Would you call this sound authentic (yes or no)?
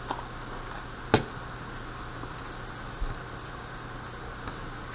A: yes